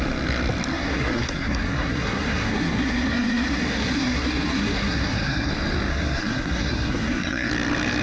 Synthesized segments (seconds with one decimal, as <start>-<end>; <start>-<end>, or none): 0.7-5.5; 5.9-7.5